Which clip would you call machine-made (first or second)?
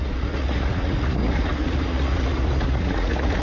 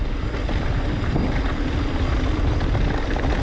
first